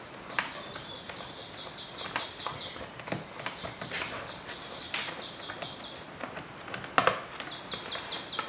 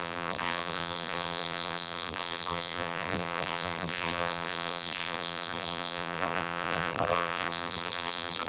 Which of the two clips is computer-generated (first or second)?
second